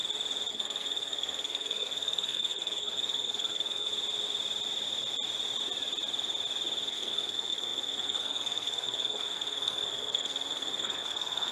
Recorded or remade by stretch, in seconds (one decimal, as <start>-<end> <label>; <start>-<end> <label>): 0.0-0.5 recorded; 0.5-3.9 remade; 3.9-6.9 recorded; 6.9-11.5 remade

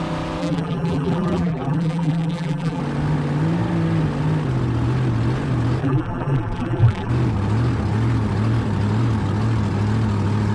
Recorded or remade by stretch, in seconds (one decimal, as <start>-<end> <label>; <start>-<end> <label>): 0.0-0.4 recorded; 0.4-2.8 remade; 2.8-5.8 recorded; 5.8-7.1 remade; 7.1-10.5 recorded